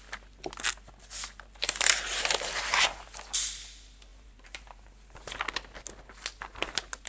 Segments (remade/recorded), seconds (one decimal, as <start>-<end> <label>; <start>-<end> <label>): 0.0-2.1 recorded; 2.1-2.9 remade; 2.9-4.1 recorded; 4.1-4.9 remade; 4.9-7.1 recorded